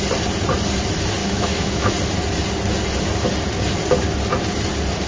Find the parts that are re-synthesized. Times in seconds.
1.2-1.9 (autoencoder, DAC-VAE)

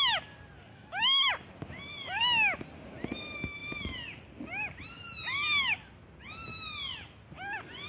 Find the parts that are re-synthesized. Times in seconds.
0.7-1.3 (autoencoder, DAC-VAE)

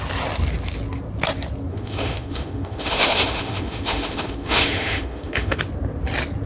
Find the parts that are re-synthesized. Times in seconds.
1.7-5.6 (autoencoder, DAC-VAE)

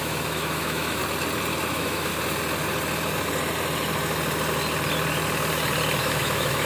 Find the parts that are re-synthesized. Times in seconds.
0.0-1.0 (autoencoder, DAC-VAE); 1.7-2.1; 6.0-6.7

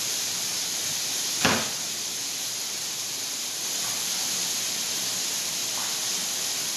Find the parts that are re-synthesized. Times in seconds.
none

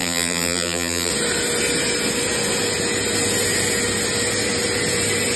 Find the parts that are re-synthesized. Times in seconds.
0.0-1.1 (vocoder, BigVGAN v2)

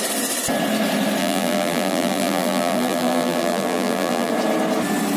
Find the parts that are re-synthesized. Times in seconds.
1.2-4.3 (vocoder, BigVGAN v2)

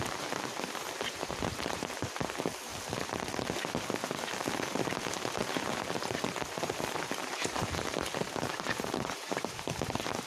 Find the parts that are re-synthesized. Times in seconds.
0.0-2.7 (vocoder, BigVGAN v2); 4.7-10.3